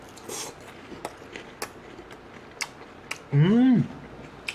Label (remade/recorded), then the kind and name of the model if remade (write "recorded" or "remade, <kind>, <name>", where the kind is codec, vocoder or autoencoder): recorded